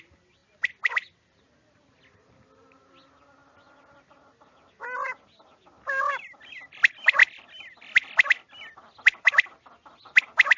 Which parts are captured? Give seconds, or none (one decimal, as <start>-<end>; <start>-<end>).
0.4-1.7; 3.4-6.1; 7.2-9.2